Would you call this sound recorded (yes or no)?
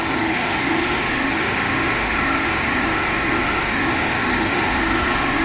no